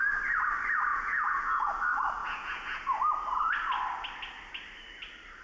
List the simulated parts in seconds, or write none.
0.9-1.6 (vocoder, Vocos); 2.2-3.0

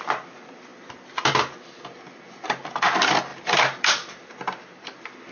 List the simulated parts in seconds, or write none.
3.3-4.1 (vocoder, BigVGAN v2)

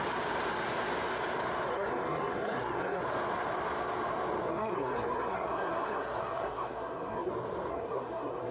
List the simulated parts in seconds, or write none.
1.7-3.0 (codec, SNAC); 4.5-7.3; 7.7-8.5